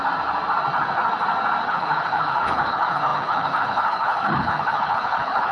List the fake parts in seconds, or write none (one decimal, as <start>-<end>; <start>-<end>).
1.7-5.5